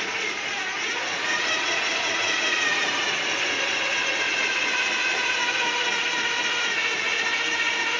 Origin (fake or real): fake